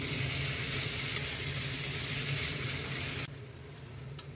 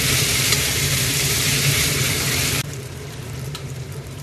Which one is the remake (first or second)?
second